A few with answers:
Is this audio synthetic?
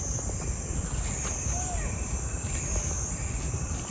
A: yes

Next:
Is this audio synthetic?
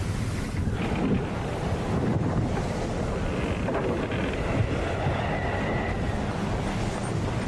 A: no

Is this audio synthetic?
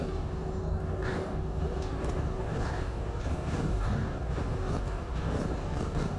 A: yes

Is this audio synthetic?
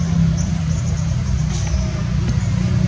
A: no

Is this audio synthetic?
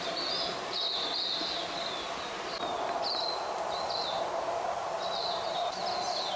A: no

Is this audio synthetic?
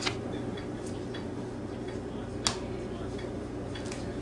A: no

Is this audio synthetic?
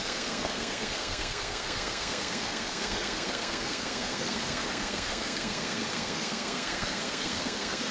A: yes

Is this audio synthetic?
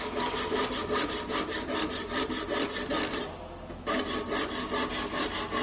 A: no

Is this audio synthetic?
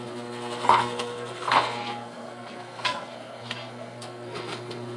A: yes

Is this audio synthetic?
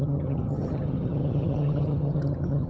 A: yes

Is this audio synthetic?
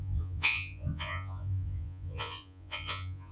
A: yes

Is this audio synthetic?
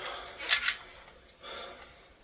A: no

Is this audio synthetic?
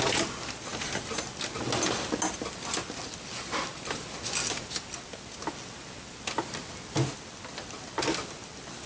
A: no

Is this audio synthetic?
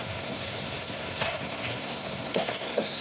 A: yes